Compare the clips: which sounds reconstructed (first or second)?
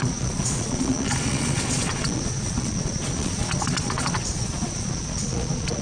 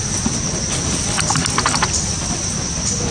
first